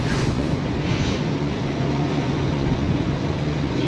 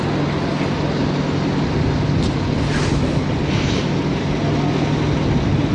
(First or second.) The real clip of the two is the second